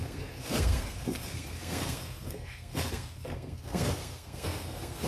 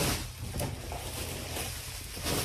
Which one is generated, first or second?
first